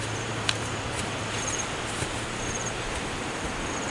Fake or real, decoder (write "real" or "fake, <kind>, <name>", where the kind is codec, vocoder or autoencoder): fake, vocoder, BigVGAN v2